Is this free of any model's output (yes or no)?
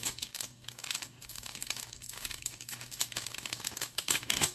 no